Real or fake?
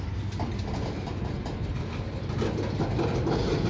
real